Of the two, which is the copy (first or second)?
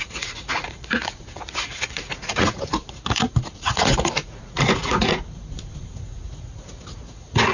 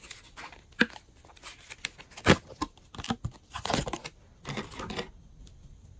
first